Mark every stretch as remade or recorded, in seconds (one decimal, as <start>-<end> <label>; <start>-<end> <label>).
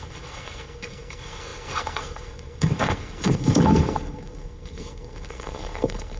0.0-6.2 remade